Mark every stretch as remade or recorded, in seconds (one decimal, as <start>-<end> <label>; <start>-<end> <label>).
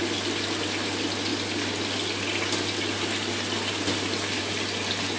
0.0-5.2 recorded